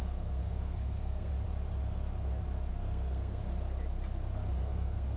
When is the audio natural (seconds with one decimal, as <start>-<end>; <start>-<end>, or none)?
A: 1.3-2.7; 3.4-4.6